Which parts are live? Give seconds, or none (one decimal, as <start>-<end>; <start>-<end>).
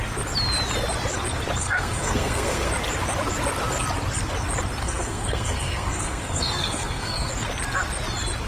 0.0-1.6; 2.7-4.8; 7.3-8.5